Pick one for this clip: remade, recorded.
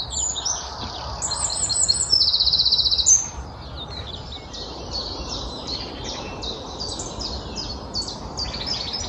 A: recorded